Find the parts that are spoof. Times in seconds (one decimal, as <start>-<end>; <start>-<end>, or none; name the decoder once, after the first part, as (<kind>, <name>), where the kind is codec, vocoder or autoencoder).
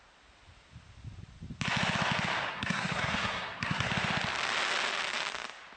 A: 2.5-3.9 (codec, SNAC)